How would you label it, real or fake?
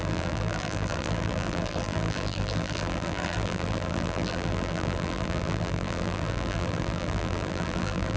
fake